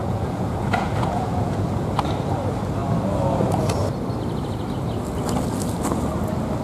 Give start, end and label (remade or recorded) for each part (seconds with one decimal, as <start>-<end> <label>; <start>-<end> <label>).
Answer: 0.0-1.9 remade; 1.9-6.6 recorded